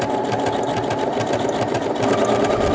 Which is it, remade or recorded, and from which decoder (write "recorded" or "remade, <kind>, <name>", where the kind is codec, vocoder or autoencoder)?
recorded